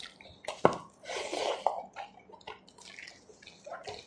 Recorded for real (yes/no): yes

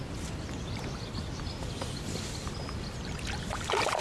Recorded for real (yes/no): yes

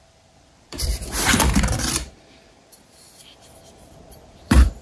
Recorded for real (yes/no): no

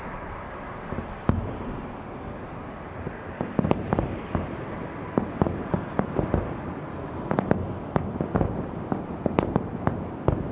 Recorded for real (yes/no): yes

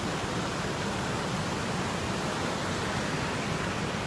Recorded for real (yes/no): yes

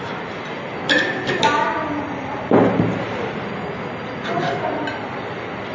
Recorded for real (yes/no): yes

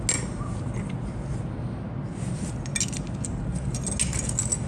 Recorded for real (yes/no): yes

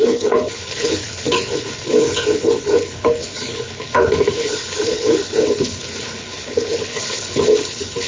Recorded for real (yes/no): no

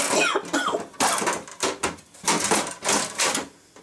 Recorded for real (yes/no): yes